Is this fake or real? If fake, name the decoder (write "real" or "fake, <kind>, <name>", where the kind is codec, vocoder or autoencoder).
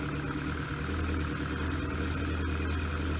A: real